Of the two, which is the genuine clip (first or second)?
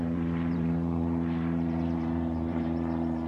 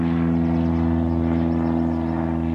second